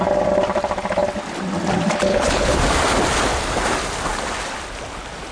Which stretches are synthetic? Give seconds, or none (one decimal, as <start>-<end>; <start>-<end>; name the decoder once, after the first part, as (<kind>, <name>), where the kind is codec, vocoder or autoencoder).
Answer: 2.1-2.6 (codec, HILCodec)